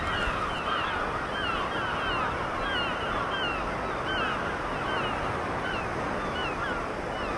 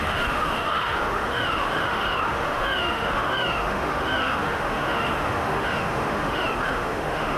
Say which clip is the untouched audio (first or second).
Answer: first